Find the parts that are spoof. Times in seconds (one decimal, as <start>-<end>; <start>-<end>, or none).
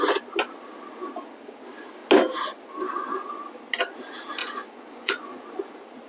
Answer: 4.4-5.1